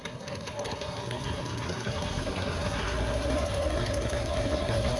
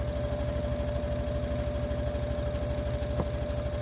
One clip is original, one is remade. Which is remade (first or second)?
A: first